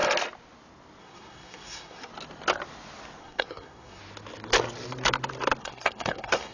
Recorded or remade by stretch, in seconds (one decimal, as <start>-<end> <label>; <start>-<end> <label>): 0.0-1.0 recorded; 1.0-2.1 remade; 2.1-3.2 recorded; 3.2-4.0 remade; 4.0-5.6 recorded; 5.6-6.5 remade